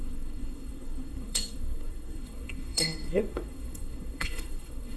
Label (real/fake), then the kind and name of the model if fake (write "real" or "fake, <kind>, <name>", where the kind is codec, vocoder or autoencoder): fake, codec, SNAC